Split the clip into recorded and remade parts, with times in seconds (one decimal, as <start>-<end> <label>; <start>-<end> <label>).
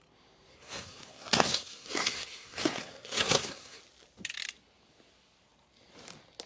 0.0-0.5 recorded; 0.5-3.8 remade; 3.8-6.5 recorded